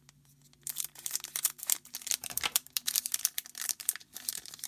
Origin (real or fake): fake